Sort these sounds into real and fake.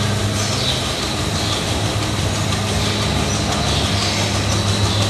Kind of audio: real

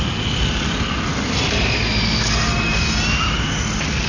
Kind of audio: real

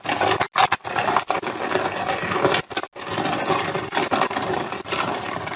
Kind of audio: real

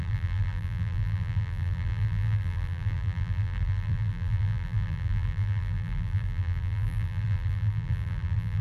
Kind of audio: fake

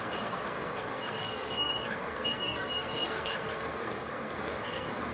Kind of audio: fake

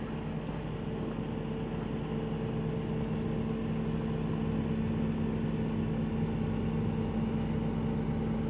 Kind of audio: real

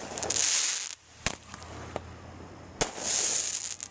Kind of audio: real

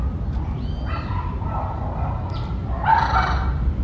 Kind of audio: real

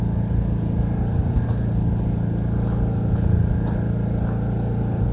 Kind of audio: real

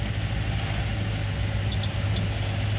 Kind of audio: real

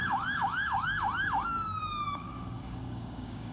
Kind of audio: fake